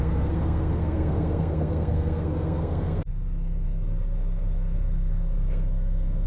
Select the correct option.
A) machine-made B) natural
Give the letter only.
A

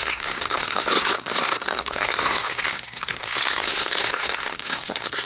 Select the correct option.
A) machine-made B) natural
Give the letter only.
A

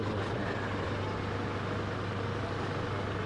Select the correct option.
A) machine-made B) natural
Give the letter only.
B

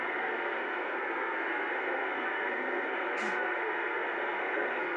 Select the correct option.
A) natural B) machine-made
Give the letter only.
B